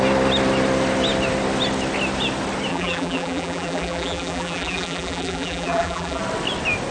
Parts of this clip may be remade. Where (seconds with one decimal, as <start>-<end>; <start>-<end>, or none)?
2.7-6.2